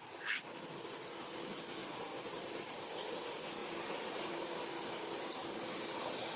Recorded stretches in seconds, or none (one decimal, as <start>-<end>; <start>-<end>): 0.0-1.8; 2.7-3.6; 4.3-6.4